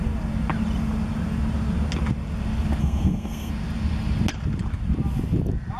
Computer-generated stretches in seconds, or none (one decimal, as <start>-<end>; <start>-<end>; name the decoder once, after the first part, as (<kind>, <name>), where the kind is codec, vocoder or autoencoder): 2.8-3.5 (codec, SNAC)